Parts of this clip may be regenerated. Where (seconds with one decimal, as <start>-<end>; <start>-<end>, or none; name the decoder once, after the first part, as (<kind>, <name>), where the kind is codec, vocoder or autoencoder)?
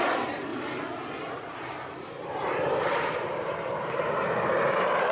0.0-0.5 (vocoder, BigVGAN v2); 1.3-5.1